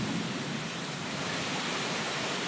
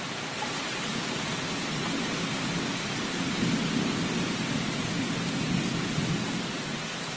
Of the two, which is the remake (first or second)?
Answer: first